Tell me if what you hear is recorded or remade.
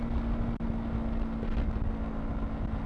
recorded